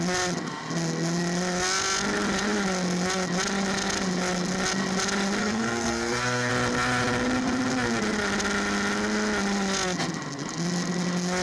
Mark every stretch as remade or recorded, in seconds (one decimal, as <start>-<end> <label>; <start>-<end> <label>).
0.0-5.4 recorded; 5.4-6.5 remade; 6.5-11.4 recorded